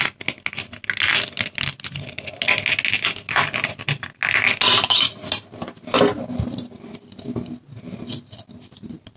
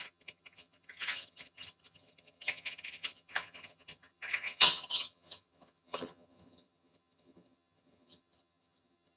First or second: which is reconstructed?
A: second